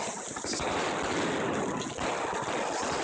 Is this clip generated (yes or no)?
no